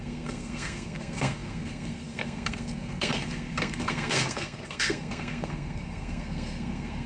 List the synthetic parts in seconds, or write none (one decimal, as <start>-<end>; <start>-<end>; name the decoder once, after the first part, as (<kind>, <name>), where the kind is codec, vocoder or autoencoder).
0.0-7.1 (codec, SNAC)

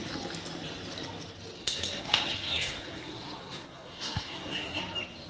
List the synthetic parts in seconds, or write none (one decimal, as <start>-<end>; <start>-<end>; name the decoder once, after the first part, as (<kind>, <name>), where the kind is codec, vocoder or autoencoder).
1.6-4.8 (codec, SNAC)

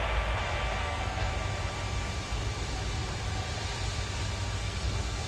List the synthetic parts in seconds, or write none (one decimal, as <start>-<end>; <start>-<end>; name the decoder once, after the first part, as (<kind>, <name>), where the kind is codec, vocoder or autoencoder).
0.8-1.3 (codec, SNAC); 4.6-5.3

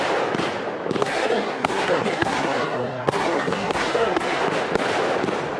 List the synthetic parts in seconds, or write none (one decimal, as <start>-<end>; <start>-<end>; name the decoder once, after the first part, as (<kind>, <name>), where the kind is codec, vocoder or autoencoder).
1.0-4.4 (codec, SNAC)

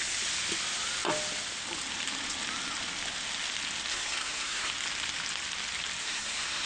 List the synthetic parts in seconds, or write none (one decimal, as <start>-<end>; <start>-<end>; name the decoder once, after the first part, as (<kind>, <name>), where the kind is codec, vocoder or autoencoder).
3.9-4.7 (codec, SNAC); 6.0-6.7

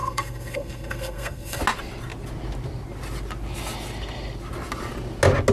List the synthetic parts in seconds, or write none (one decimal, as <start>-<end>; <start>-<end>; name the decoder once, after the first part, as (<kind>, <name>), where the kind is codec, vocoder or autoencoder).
0.0-1.6 (codec, SNAC)